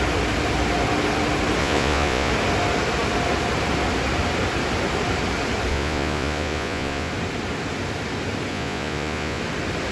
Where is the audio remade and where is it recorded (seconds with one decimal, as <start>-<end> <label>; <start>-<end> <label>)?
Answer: 0.0-1.6 recorded; 1.6-2.3 remade; 2.3-5.7 recorded; 5.7-7.1 remade; 7.1-8.5 recorded; 8.5-9.4 remade; 9.4-9.9 recorded